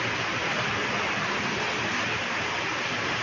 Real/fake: real